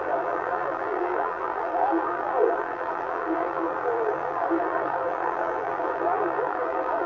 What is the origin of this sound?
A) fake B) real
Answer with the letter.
A